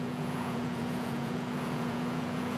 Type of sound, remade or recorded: remade